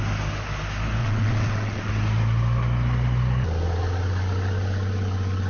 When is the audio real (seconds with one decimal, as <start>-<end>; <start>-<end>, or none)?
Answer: 0.0-1.0; 1.9-5.5